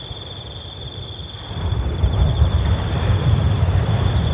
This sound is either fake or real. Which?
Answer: fake